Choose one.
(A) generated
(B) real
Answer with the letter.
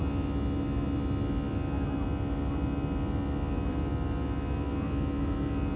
B